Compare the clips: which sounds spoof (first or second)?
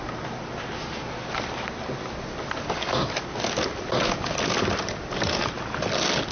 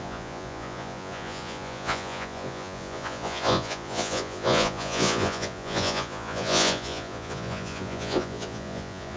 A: second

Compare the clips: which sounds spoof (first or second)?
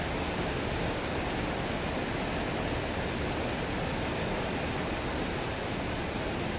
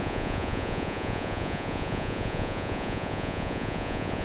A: second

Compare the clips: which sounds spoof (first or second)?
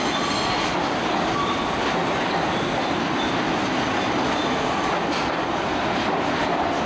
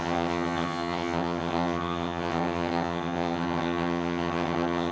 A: second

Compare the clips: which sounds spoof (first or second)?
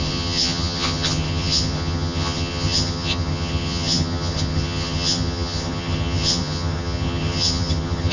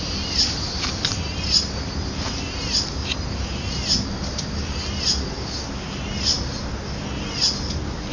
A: first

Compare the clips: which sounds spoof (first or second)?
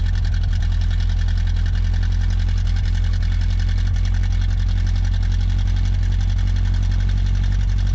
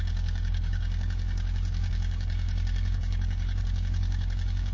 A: second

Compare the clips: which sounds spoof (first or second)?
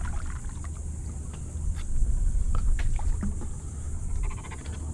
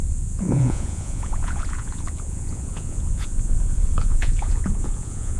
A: second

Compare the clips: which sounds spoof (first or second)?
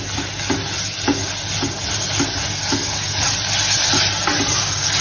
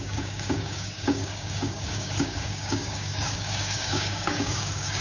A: second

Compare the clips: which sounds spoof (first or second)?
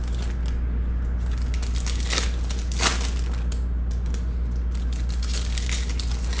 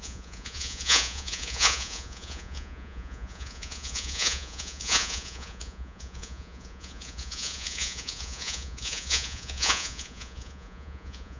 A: second